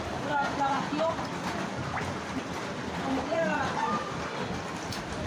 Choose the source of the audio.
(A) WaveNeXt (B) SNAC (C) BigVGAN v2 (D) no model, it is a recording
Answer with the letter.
D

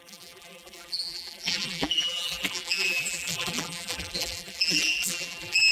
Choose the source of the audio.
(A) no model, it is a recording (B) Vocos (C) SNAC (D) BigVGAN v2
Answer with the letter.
D